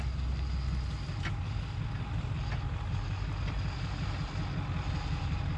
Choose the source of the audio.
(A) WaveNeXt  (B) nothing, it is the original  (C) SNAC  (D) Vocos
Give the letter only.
B